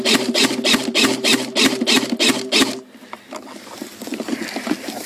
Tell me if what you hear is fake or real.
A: real